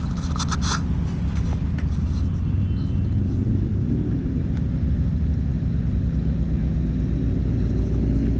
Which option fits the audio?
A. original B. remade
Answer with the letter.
A